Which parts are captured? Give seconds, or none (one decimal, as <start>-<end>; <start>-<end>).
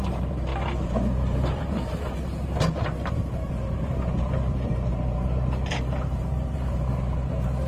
none